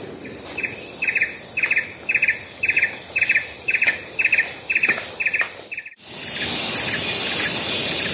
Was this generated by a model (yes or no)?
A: no